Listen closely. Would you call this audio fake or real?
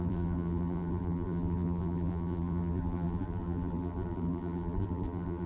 fake